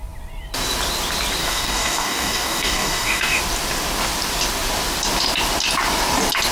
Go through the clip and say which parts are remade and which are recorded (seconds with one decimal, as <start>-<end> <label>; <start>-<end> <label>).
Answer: 0.0-1.4 recorded; 1.4-3.4 remade; 3.4-6.5 recorded